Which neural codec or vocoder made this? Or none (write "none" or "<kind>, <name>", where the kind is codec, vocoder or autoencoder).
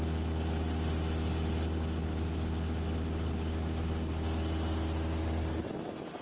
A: none